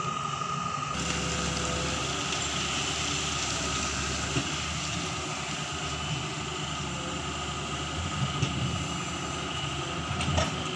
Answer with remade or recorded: recorded